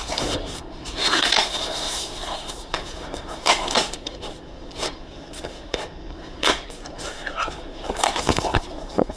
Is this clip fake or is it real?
fake